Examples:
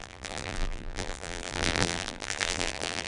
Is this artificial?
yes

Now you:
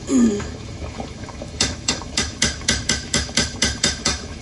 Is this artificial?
yes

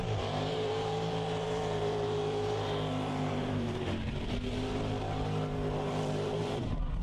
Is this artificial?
yes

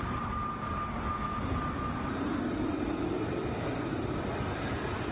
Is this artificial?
no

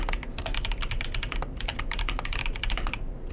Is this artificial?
no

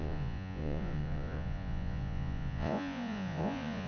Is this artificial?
yes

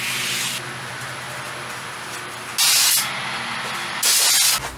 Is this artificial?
no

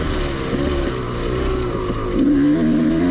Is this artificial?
no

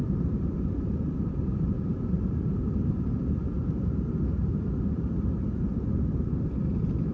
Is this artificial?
yes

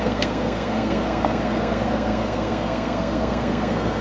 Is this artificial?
yes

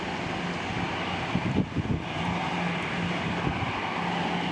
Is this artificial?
no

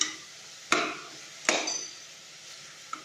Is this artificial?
no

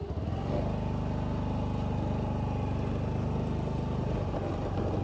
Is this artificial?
no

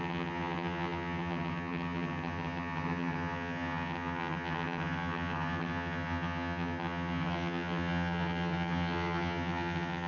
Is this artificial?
yes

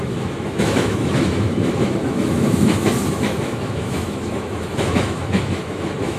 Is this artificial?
yes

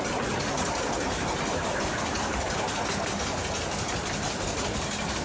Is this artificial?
no